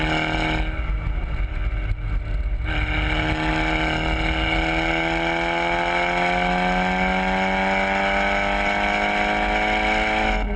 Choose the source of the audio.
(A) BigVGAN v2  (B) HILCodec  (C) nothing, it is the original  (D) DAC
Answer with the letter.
C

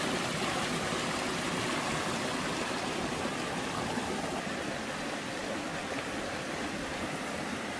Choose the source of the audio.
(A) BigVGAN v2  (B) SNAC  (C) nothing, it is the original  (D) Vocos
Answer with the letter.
C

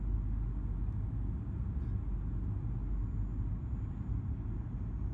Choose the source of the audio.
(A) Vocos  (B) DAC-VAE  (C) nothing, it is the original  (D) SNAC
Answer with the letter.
C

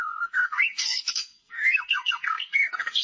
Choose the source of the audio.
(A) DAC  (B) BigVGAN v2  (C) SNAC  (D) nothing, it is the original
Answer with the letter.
C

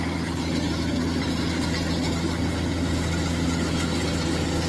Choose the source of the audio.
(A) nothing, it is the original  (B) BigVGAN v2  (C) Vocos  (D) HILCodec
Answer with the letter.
A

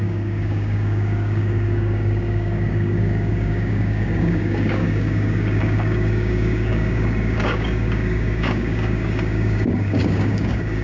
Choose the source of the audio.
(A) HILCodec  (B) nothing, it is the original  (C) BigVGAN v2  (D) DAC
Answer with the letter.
D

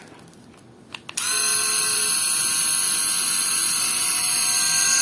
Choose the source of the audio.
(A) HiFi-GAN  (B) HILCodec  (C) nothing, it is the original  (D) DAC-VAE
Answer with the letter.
C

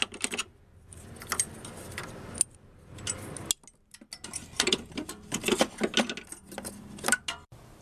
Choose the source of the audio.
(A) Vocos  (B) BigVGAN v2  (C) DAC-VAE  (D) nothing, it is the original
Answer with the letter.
D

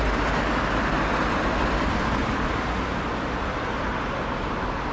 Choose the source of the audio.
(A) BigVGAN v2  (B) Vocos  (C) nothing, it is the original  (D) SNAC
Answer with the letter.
C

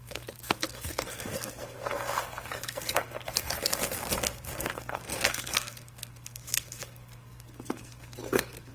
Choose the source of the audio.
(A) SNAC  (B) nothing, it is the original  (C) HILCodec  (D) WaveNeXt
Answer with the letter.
A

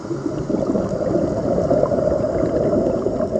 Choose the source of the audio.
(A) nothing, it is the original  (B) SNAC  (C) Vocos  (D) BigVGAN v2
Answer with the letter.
A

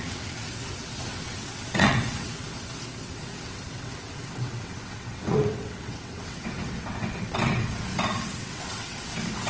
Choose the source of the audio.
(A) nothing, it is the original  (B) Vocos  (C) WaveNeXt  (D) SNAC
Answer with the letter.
C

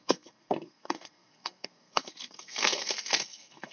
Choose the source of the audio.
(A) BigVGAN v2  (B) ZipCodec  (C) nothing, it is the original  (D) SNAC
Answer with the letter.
D